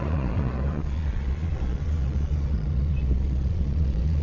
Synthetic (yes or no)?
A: yes